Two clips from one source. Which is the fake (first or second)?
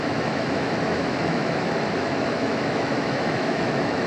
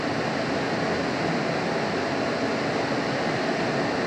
first